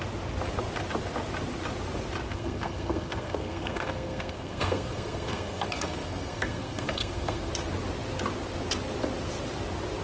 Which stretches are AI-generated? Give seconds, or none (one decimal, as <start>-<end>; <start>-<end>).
2.3-7.5